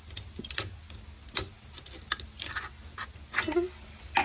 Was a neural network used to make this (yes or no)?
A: no